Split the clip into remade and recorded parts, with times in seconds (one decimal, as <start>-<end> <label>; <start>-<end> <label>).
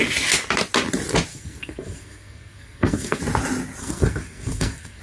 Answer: 0.0-1.3 recorded; 1.3-3.2 remade; 3.2-3.8 recorded; 3.8-5.0 remade